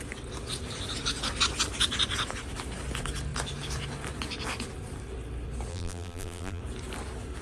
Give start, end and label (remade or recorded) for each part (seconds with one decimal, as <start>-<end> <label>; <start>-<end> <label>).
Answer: 0.0-5.7 recorded; 5.7-6.6 remade; 6.6-7.4 recorded